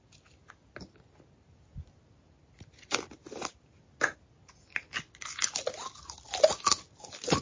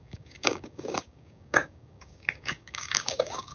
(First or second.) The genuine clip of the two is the first